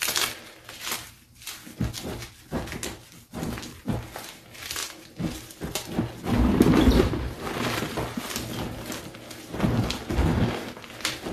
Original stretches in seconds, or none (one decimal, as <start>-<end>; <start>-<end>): 0.0-11.3